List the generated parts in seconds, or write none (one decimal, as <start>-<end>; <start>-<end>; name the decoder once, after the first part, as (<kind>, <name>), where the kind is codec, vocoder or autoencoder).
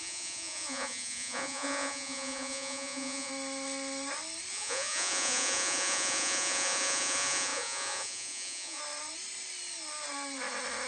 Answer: 0.0-3.3 (vocoder, Vocos); 4.5-8.8